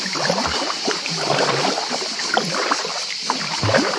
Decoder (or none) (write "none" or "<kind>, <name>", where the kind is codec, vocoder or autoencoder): none